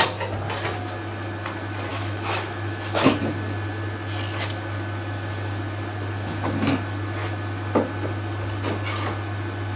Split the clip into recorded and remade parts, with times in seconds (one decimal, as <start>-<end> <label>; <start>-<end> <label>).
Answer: 0.0-1.9 recorded; 1.9-3.2 remade; 3.2-9.8 recorded